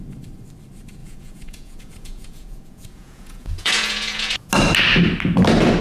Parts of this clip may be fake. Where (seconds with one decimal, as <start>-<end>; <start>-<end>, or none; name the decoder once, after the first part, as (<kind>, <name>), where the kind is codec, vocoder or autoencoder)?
1.0-4.5 (vocoder, Vocos)